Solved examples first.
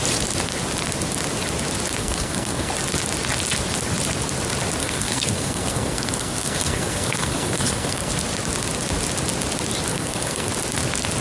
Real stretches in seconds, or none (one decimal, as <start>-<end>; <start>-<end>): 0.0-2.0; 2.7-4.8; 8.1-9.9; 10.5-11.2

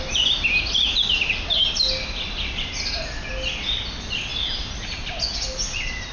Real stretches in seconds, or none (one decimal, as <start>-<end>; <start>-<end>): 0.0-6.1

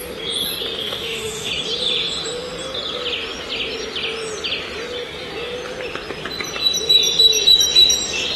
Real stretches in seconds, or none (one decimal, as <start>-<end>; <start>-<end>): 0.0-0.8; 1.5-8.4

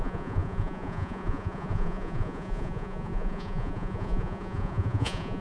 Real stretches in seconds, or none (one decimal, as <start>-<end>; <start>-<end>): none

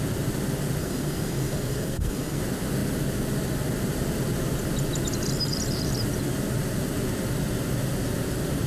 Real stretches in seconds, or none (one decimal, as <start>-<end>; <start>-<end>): 0.0-0.8; 2.4-8.7

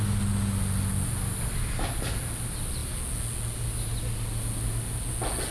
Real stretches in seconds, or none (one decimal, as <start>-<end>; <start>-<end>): 0.0-5.5